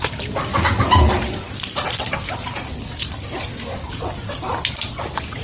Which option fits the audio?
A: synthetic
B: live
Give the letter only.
B